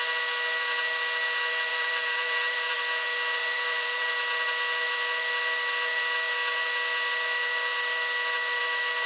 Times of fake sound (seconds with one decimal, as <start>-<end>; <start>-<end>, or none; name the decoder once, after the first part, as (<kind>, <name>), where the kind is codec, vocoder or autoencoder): 1.7-2.7 (vocoder, BigVGAN v2); 3.4-4.1